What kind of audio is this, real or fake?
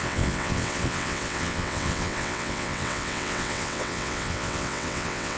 fake